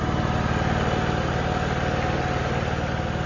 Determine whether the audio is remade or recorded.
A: recorded